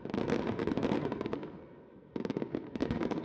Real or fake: fake